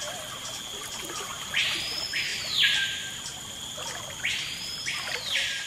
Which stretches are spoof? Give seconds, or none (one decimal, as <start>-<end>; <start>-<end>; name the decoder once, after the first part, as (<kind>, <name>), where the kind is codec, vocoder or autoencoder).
1.3-1.8 (vocoder, BigVGAN v2); 2.3-3.2